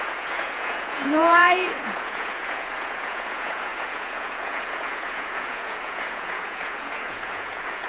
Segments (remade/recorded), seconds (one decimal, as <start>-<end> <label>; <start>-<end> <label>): 0.0-7.9 remade